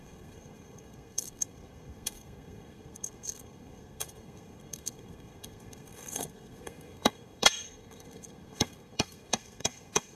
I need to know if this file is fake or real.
fake